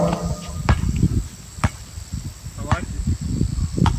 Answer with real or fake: real